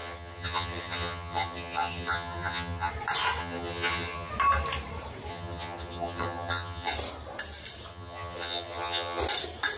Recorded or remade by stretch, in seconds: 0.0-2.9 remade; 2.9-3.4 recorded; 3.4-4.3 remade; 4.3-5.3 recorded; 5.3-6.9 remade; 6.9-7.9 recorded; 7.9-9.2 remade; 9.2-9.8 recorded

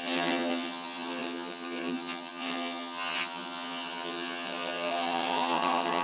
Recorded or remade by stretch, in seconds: 0.0-6.0 remade

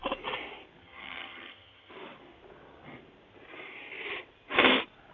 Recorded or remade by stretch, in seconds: 0.0-0.8 recorded; 0.8-1.9 remade; 1.9-5.1 recorded